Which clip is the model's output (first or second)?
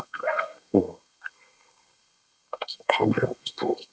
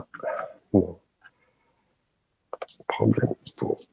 first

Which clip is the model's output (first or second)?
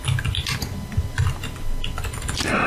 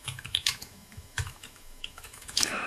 second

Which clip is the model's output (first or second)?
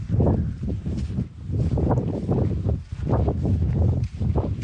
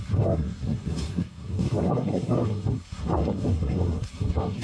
second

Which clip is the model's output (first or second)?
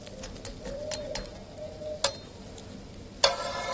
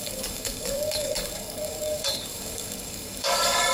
second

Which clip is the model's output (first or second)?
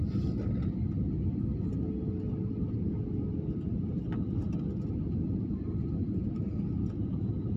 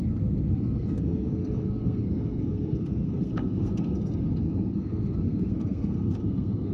second